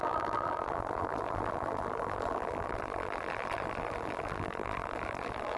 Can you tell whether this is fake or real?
fake